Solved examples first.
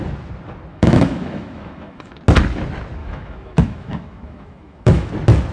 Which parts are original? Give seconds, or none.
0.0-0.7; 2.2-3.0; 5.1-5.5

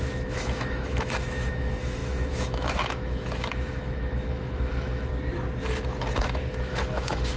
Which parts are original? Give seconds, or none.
5.1-6.1

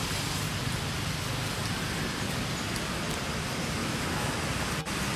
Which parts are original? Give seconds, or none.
0.0-3.8; 4.4-5.2

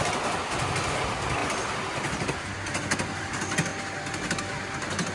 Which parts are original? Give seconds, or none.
0.0-5.1

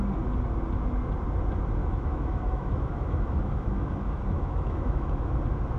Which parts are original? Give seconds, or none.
0.0-1.8; 5.3-5.8